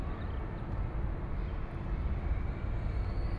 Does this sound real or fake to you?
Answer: real